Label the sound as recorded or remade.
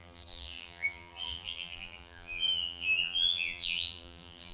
remade